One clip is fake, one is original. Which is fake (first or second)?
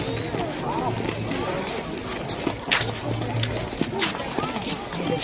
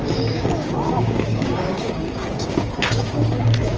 second